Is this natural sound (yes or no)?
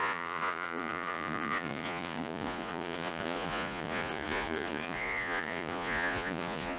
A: no